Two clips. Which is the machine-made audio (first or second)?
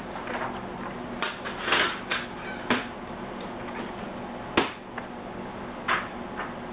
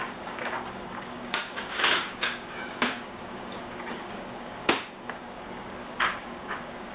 second